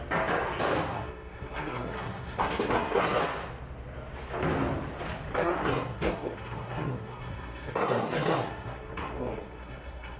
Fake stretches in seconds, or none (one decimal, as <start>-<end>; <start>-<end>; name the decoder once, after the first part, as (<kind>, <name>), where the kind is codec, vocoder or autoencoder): 0.9-3.2 (codec, SNAC); 5.3-10.2